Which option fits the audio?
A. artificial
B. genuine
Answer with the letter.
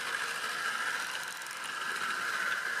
B